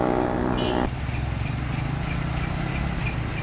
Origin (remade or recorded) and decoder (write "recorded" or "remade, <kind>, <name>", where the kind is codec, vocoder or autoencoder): recorded